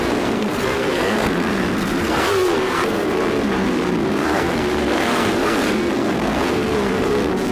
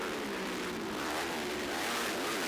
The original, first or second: second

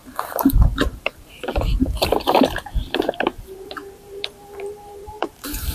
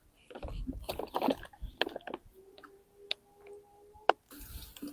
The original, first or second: second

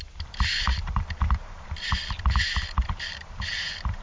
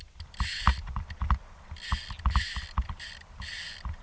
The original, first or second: second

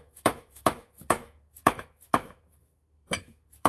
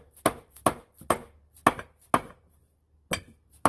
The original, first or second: second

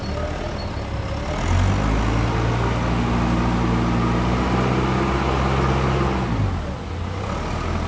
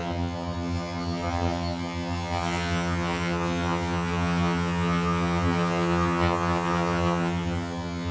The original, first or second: first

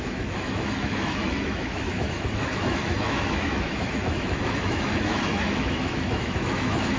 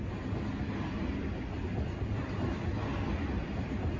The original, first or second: second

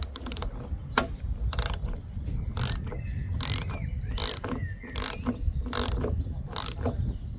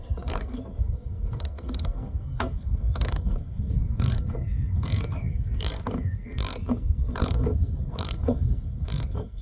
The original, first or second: first